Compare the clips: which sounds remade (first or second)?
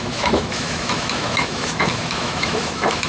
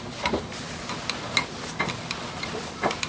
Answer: first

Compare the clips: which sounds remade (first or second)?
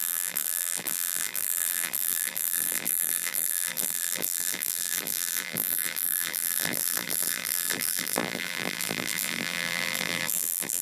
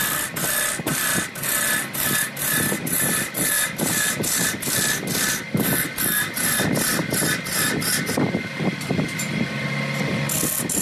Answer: first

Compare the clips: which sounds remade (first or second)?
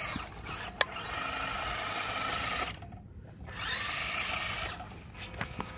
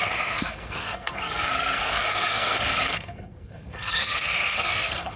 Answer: second